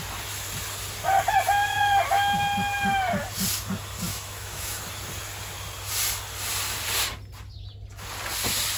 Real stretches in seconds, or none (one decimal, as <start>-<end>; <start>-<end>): 0.0-4.1; 4.8-8.8